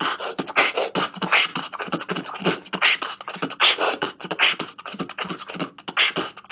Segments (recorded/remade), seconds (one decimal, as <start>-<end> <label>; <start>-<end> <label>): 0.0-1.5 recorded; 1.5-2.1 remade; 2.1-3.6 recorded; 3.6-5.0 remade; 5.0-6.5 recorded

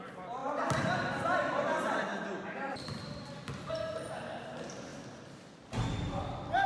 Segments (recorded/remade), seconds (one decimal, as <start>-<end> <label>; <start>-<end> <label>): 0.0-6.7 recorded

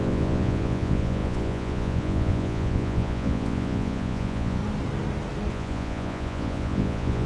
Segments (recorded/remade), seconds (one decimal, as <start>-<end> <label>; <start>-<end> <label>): 0.0-4.6 remade; 4.6-5.5 recorded; 5.5-7.3 remade

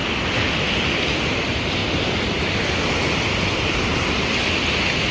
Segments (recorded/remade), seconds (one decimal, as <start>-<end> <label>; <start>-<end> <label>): 0.0-5.1 recorded

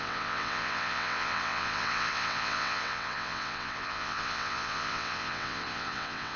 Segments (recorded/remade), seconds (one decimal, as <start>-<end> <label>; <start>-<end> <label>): 0.0-6.4 remade

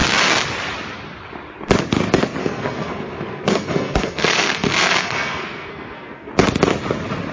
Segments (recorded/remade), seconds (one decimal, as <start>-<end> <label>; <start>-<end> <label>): 0.0-2.4 recorded; 2.4-6.3 remade; 6.3-7.3 recorded

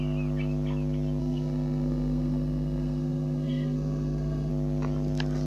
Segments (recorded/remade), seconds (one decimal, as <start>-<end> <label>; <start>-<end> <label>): 0.0-1.2 recorded; 1.2-4.5 remade; 4.5-5.5 recorded

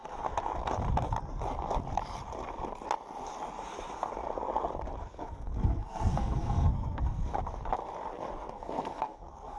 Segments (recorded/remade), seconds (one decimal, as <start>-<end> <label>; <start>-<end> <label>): 0.0-5.0 recorded; 5.0-7.3 remade; 7.3-8.5 recorded; 8.5-9.6 remade